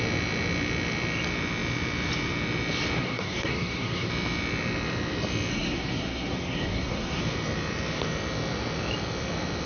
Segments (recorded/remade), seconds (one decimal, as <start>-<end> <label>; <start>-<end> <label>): 0.0-3.0 recorded; 3.0-4.1 remade; 4.1-5.5 recorded; 5.5-7.2 remade; 7.2-9.7 recorded